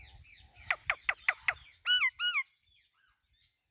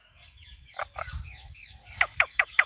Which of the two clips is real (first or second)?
first